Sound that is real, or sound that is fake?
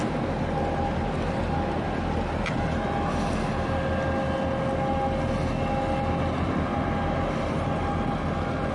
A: real